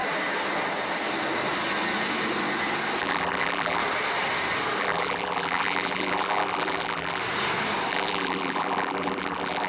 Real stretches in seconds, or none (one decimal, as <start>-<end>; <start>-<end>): 0.0-3.0; 3.8-4.8; 7.2-7.9